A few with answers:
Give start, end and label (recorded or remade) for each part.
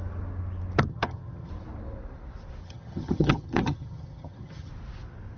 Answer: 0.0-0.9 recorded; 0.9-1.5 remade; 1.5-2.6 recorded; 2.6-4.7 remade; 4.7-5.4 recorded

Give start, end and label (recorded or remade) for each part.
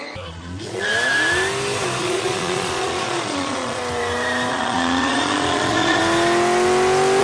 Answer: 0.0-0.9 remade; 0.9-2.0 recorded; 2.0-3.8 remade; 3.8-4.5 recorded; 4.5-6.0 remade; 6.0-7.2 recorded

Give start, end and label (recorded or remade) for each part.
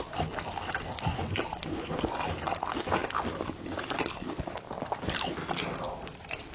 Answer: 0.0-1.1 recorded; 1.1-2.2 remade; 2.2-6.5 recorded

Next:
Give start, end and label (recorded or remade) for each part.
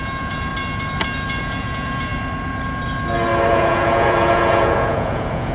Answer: 0.0-0.5 remade; 0.5-1.4 recorded; 1.4-2.1 remade; 2.1-3.5 recorded; 3.5-5.5 remade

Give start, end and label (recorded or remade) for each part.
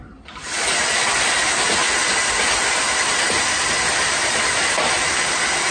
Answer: 0.0-5.7 recorded